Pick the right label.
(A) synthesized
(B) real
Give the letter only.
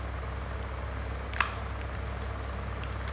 B